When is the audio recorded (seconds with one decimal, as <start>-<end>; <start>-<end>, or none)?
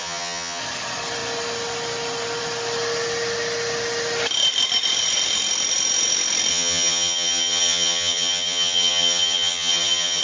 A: 0.6-6.5